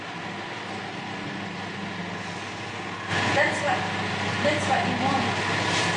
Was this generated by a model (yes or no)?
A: no